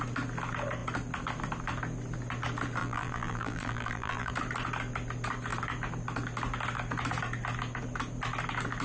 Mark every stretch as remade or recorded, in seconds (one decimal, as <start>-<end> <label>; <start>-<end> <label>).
0.0-2.8 recorded; 2.8-4.3 remade; 4.3-8.8 recorded